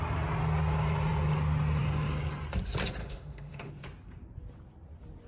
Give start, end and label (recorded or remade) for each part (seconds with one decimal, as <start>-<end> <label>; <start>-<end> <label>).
0.0-3.0 recorded; 3.0-3.7 remade; 3.7-5.3 recorded